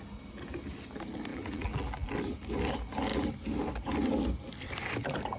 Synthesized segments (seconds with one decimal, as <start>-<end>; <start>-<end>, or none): 1.3-2.1